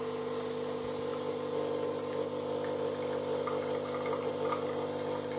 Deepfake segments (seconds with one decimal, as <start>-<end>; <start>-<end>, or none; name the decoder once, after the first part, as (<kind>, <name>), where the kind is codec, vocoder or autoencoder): none